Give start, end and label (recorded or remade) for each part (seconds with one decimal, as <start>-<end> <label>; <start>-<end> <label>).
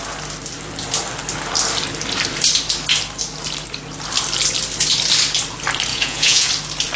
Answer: 0.0-5.9 recorded; 5.9-6.5 remade; 6.5-7.0 recorded